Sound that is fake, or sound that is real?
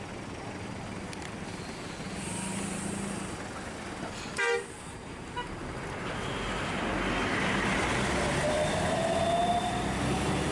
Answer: real